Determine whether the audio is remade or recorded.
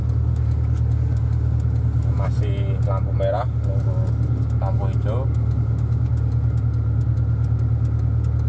recorded